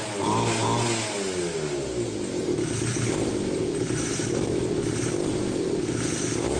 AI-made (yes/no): no